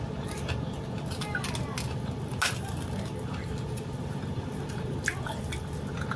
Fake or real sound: real